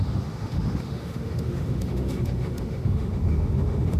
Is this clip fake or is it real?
fake